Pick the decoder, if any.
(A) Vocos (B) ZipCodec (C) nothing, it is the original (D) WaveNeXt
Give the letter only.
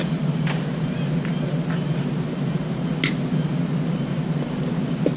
C